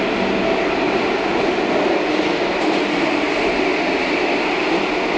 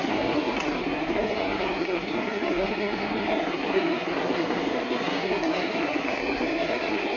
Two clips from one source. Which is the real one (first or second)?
first